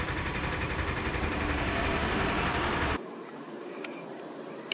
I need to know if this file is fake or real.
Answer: fake